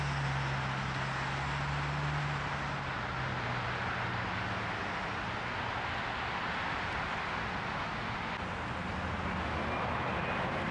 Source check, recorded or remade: recorded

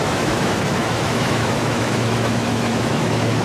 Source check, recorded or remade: remade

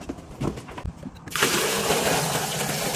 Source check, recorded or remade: remade